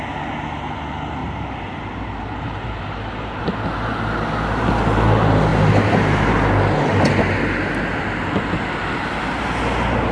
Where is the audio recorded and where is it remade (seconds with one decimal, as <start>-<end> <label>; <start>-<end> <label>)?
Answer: 0.0-1.2 recorded; 1.2-3.4 remade; 3.4-10.1 recorded